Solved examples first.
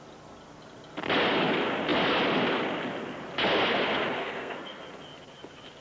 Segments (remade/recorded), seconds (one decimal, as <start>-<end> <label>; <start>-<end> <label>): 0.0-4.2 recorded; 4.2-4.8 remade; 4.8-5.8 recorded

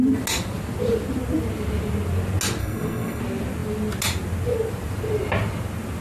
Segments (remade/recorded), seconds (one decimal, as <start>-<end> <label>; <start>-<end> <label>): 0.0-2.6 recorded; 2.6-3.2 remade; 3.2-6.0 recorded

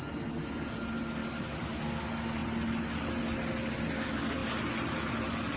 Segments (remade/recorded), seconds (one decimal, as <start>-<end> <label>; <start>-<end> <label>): 0.0-5.6 recorded